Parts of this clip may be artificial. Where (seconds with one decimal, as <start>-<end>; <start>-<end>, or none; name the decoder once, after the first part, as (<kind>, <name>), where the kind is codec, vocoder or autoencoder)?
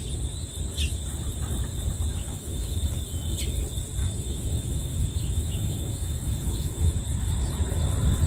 2.1-2.8 (autoencoder, DAC-VAE); 4.0-7.0